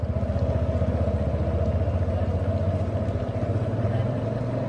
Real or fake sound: real